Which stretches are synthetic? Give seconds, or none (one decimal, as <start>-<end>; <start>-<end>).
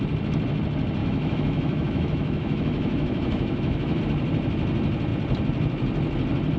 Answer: 1.0-4.0